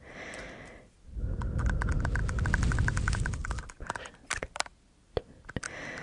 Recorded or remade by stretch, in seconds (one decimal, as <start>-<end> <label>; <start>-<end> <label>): 0.0-6.0 recorded